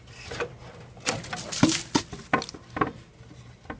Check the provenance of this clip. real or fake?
real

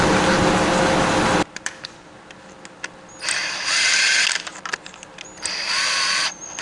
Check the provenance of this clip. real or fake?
real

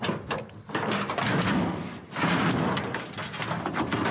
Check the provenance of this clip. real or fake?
real